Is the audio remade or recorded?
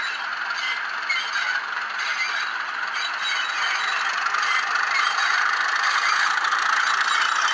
recorded